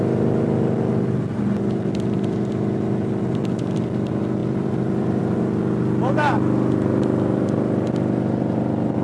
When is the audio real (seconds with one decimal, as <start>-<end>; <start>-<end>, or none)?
0.0-4.4; 5.2-9.0